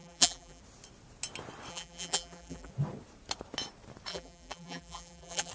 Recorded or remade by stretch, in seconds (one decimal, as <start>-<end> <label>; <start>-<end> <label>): 0.0-0.6 remade; 0.6-1.7 recorded; 1.7-2.7 remade; 2.7-4.1 recorded; 4.1-5.5 remade

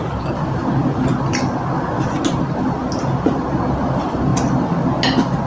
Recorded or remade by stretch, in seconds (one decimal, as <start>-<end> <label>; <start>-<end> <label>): 0.0-0.6 remade; 0.6-2.2 recorded; 2.2-2.8 remade; 2.8-3.9 recorded; 3.9-4.3 remade; 4.3-5.5 recorded

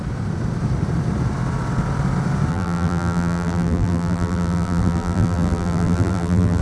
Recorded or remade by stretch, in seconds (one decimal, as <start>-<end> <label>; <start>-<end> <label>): 0.0-2.5 recorded; 2.5-6.6 remade

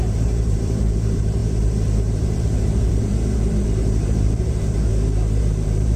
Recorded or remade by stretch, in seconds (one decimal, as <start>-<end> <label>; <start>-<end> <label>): 0.0-4.9 remade; 4.9-5.4 recorded; 5.4-6.0 remade

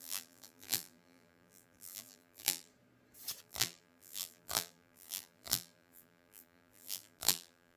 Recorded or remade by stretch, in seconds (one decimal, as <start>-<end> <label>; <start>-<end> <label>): 0.0-2.7 remade; 2.7-3.4 recorded; 3.4-7.8 remade